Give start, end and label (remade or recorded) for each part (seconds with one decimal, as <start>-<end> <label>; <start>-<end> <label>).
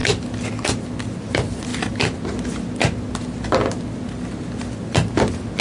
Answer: 0.0-5.6 recorded